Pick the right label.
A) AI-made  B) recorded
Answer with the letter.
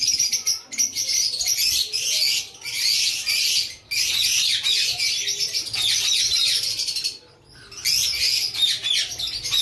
B